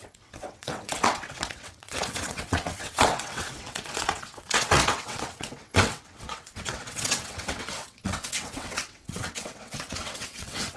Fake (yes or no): yes